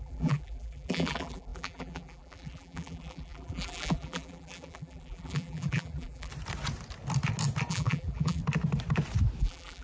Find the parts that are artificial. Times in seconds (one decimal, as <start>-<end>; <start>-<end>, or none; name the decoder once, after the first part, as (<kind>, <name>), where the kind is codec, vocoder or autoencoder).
0.0-6.3 (vocoder, BigVGAN v2); 7.7-8.4; 9.4-9.8